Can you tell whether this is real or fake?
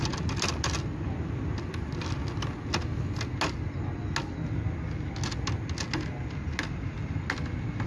real